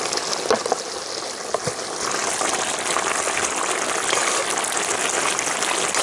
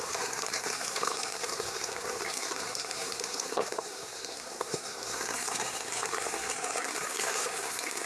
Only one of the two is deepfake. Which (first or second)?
second